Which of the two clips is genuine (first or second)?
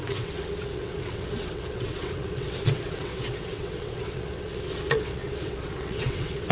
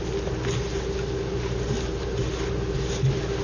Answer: second